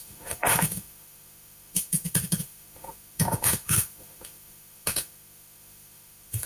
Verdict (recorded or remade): remade